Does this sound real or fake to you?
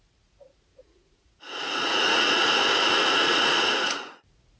fake